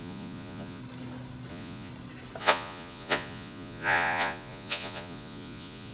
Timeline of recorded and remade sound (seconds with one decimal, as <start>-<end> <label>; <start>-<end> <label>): 0.0-0.8 remade; 0.8-1.5 recorded; 1.5-1.9 remade; 1.9-2.4 recorded; 2.4-5.9 remade

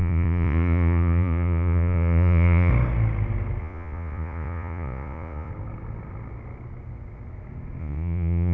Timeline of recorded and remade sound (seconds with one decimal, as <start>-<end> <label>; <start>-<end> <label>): 0.0-2.7 remade; 2.7-3.6 recorded; 3.6-5.5 remade; 5.5-7.8 recorded; 7.8-8.5 remade

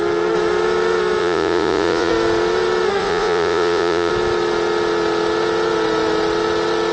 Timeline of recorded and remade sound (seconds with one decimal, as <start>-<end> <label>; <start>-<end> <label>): 0.0-1.2 recorded; 1.2-2.1 remade; 2.1-3.0 recorded; 3.0-4.1 remade; 4.1-6.9 recorded

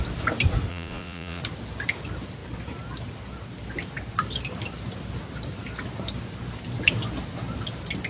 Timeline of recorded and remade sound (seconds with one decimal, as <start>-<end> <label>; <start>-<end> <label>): 0.0-0.7 recorded; 0.7-1.4 remade; 1.4-8.1 recorded

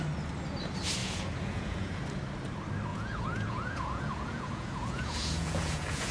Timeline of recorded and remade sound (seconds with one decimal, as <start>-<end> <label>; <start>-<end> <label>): 0.0-1.0 recorded; 1.0-2.0 remade; 2.0-2.9 recorded; 2.9-6.1 remade

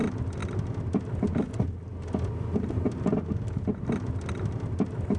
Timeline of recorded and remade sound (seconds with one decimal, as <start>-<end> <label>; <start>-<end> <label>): 0.0-5.2 recorded